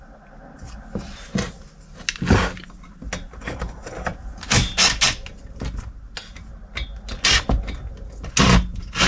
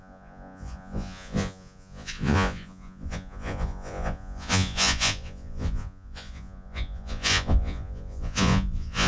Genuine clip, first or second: first